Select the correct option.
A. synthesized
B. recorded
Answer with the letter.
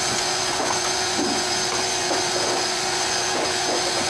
A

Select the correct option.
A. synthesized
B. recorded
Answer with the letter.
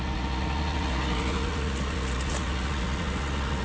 A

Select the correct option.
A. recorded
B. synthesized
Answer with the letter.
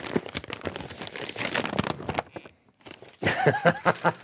A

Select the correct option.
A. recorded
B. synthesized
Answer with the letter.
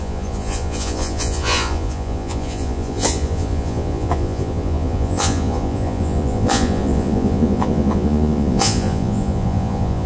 B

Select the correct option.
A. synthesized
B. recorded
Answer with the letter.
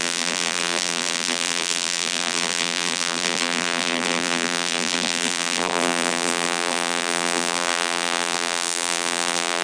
A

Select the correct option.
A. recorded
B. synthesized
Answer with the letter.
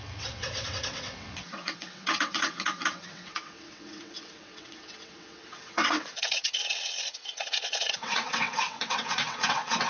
B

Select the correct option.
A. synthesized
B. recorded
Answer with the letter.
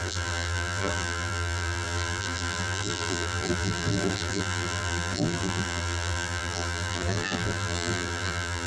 A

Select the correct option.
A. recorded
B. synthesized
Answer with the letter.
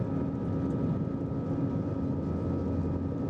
A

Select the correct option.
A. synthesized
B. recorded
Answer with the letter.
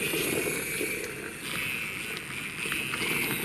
B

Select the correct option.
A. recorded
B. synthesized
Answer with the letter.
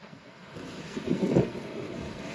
B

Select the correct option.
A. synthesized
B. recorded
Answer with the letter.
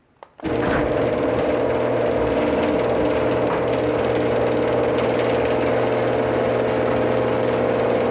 B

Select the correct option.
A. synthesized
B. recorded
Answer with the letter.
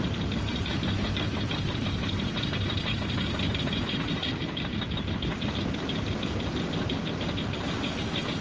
B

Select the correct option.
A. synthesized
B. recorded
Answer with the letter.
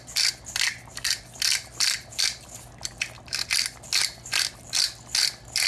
B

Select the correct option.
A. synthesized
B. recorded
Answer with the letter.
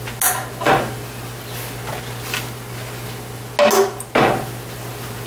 B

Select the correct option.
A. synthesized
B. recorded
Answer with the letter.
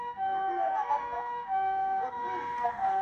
A